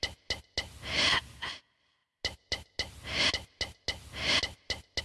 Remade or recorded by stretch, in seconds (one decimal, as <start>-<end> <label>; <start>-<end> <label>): 0.0-5.0 recorded